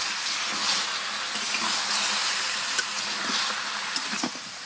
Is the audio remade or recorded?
recorded